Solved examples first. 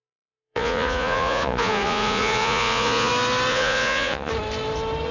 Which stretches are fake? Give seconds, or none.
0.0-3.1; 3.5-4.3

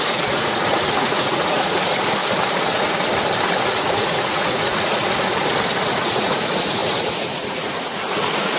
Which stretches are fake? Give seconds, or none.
0.0-2.2; 3.6-5.0; 5.9-8.6

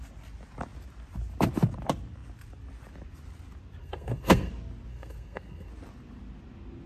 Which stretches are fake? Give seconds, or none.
3.8-4.5; 4.9-5.7